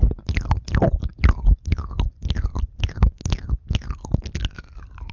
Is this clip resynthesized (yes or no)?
no